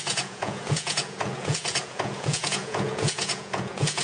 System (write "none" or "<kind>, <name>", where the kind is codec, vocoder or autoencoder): vocoder, Vocos